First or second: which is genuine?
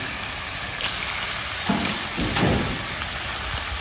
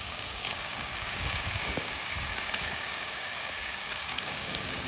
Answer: first